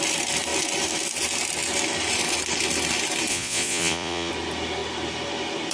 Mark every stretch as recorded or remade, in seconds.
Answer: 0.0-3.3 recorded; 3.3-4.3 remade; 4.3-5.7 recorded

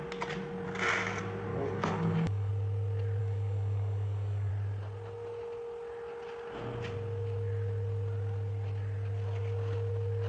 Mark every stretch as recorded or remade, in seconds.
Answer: 0.0-1.5 recorded; 1.5-2.5 remade; 2.5-3.2 recorded; 3.2-4.5 remade; 4.5-10.3 recorded